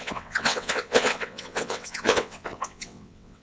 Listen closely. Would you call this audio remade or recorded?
remade